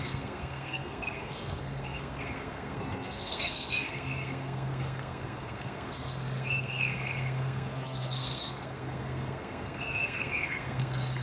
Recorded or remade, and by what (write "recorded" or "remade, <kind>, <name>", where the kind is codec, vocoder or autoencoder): remade, codec, SNAC